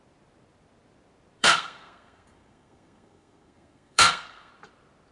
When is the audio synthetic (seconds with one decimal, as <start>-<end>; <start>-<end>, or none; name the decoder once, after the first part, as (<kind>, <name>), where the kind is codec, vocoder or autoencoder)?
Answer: 1.4-4.5 (codec, SNAC)